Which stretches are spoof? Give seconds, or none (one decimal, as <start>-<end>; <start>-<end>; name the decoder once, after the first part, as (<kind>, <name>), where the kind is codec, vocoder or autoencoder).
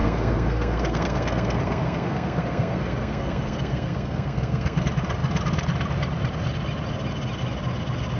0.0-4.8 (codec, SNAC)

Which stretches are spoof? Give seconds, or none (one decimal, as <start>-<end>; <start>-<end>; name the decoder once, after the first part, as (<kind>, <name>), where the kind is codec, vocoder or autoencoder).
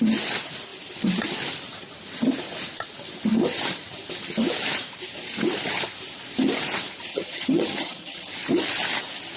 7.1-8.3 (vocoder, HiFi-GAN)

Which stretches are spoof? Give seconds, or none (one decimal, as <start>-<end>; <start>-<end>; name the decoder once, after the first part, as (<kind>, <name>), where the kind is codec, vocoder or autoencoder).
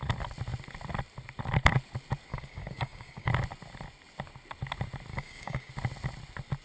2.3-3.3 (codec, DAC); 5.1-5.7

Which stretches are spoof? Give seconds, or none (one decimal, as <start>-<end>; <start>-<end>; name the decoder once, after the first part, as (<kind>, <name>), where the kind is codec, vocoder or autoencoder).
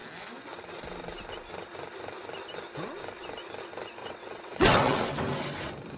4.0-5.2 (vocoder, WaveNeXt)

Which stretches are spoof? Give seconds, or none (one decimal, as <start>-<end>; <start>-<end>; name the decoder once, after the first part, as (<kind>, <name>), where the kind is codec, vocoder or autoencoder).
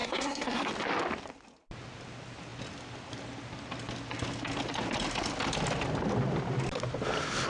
0.0-0.7 (codec, SNAC)